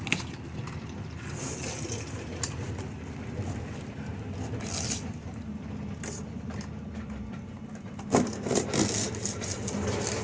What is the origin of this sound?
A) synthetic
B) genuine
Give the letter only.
B